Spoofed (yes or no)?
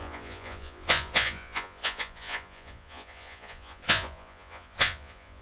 yes